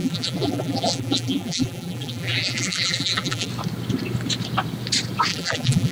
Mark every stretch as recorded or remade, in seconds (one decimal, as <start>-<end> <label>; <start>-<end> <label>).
0.0-3.5 remade; 3.5-5.3 recorded; 5.3-5.9 remade